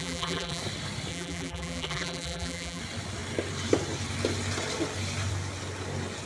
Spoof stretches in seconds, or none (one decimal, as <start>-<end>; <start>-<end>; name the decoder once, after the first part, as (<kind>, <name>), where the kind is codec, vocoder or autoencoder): 0.0-0.6 (vocoder, BigVGAN v2); 1.1-2.8